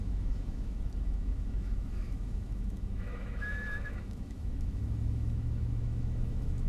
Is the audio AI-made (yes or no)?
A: yes